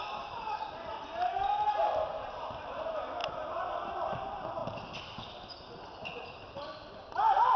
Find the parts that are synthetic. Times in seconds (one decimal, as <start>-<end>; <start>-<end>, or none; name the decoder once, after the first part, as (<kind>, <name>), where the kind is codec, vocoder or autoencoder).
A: none